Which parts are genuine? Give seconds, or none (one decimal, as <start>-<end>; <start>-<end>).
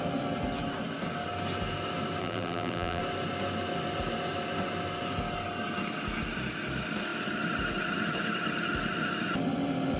0.0-2.2; 3.0-10.0